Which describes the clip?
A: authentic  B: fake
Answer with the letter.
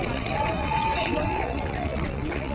B